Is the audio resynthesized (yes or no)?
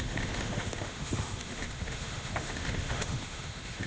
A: yes